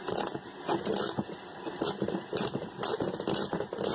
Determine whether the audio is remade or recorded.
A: recorded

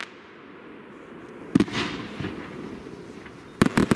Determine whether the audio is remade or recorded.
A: recorded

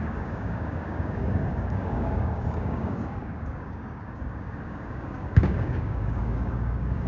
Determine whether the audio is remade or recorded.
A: remade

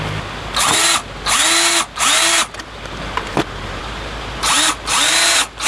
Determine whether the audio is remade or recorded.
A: recorded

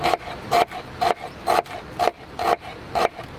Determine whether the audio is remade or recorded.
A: recorded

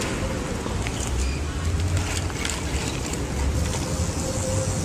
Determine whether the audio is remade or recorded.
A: recorded